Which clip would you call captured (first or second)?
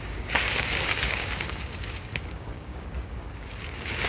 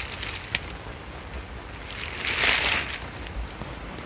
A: second